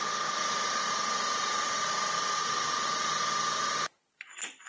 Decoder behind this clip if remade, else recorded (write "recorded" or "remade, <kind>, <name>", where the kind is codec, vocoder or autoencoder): recorded